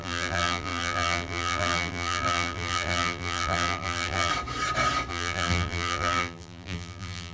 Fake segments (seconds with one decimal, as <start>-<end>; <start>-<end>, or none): 0.0-4.3; 5.1-7.3